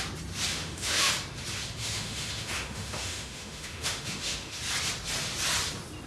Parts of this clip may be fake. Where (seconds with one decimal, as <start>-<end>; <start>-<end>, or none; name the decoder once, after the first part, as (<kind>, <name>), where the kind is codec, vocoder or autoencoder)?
0.5-1.1 (autoencoder, DAC-VAE); 1.8-4.6